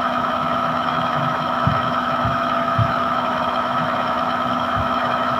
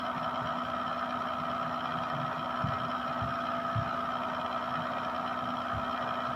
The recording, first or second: second